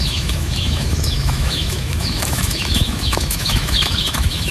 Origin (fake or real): fake